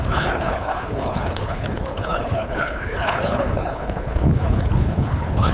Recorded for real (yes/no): no